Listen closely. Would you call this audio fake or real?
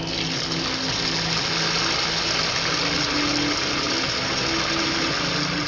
real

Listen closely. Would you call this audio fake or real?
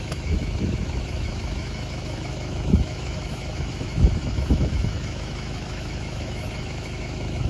fake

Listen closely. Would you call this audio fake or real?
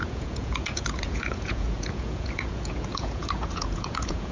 fake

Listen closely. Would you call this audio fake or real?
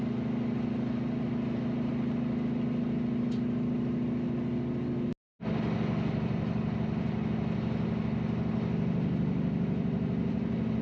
real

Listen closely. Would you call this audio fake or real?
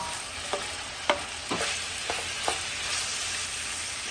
real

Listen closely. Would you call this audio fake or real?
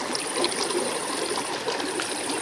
real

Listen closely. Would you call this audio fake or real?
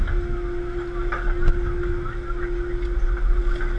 real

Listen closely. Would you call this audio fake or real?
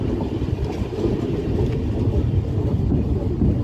real